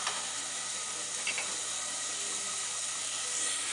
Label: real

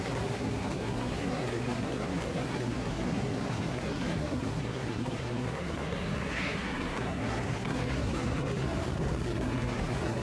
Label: fake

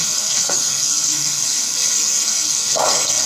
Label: fake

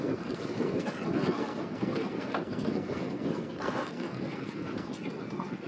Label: fake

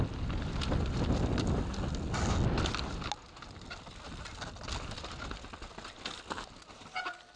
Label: real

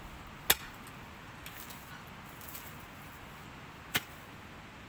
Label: real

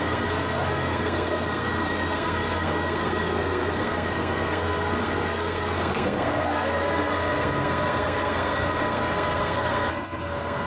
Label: fake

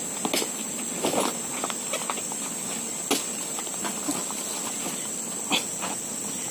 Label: real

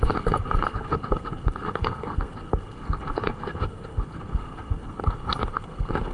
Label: fake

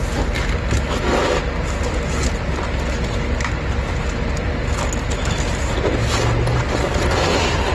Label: real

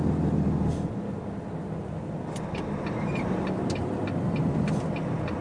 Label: real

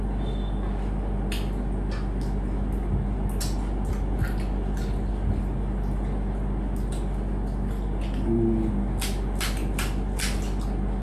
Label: real